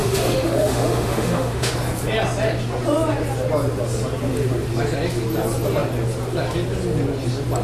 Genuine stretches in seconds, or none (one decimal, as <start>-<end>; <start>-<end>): 1.7-7.6